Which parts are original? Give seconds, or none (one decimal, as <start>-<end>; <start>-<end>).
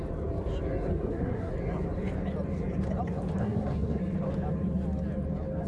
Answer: 0.0-0.9; 1.5-3.4; 4.0-5.7